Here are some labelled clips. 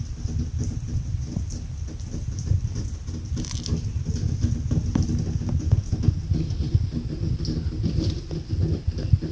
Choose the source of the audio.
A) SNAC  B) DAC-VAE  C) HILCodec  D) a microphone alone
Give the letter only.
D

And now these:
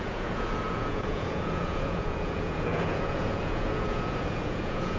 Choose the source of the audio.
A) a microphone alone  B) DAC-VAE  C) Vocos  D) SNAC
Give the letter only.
C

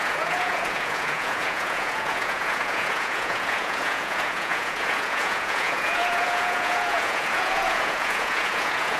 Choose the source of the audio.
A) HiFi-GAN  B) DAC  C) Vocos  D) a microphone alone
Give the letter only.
C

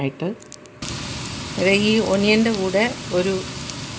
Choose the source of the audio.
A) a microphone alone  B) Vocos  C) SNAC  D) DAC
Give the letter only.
A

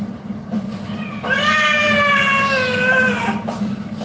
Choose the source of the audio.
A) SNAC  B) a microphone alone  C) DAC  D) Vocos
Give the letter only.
B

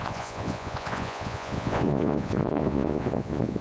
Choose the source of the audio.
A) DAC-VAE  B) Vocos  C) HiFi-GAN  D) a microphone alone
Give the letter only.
B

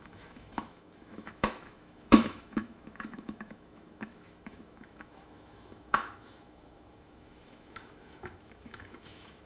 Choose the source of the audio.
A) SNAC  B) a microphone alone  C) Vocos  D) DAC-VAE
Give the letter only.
D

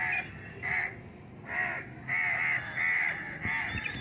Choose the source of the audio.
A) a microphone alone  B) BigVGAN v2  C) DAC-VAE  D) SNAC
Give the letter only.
A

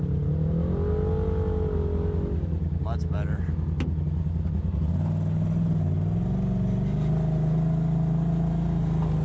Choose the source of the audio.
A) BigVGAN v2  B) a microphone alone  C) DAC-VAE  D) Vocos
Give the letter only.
B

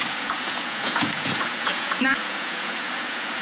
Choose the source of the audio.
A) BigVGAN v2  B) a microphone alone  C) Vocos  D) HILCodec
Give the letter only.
C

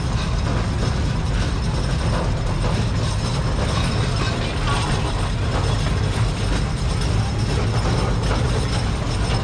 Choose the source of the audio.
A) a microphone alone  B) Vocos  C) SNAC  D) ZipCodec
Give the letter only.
A